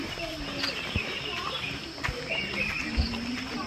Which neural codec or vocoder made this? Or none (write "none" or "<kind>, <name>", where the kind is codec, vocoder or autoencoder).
none